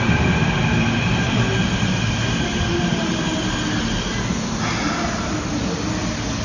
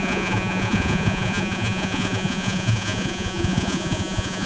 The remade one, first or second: second